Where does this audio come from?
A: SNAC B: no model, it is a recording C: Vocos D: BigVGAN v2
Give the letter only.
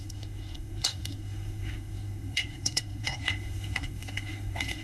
A